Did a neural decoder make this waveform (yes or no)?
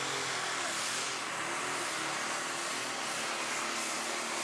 no